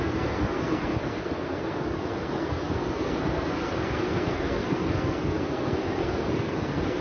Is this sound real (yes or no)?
no